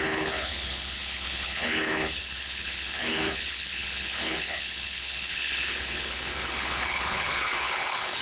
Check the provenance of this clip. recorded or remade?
remade